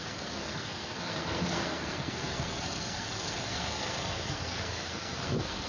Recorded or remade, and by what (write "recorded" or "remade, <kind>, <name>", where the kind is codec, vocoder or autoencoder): remade, codec, SNAC